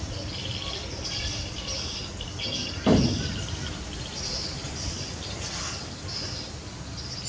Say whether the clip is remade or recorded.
recorded